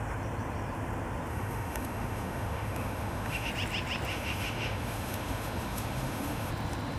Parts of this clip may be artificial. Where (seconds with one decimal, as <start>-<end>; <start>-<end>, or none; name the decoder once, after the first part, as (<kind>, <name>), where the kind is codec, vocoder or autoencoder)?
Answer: 1.3-3.5 (autoencoder, DAC-VAE); 4.1-6.5